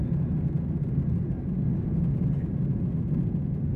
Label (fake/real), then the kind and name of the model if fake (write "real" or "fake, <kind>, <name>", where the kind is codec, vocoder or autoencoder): real